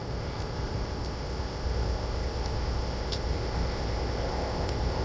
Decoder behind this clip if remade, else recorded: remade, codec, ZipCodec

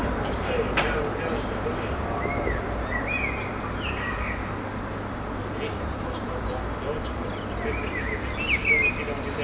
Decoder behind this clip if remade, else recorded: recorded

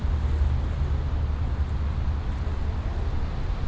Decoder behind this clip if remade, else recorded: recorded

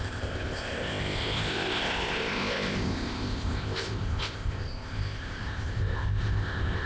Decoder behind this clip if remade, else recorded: remade, codec, ZipCodec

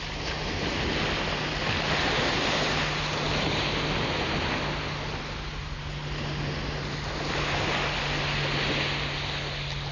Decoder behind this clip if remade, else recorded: recorded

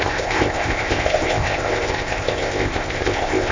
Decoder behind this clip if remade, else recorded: remade, codec, ZipCodec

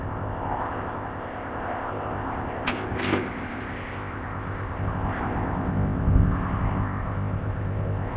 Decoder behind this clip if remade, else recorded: remade, codec, ZipCodec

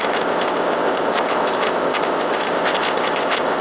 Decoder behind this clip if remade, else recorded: remade, codec, ZipCodec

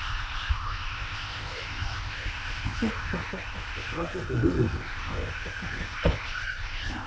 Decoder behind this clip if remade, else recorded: remade, codec, ZipCodec